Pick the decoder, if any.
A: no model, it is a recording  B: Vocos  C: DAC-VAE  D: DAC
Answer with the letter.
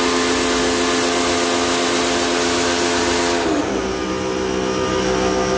A